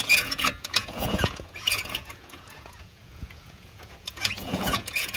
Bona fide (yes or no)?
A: no